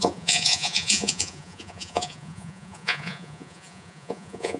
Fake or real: fake